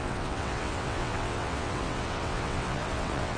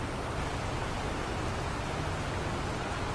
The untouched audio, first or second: second